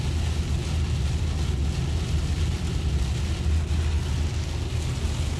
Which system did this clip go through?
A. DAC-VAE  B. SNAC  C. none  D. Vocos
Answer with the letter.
C